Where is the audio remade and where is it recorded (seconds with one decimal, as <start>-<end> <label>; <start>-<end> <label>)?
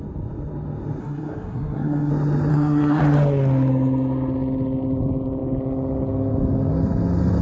0.0-1.0 recorded; 1.0-2.1 remade; 2.1-2.5 recorded; 2.5-3.0 remade; 3.0-7.4 recorded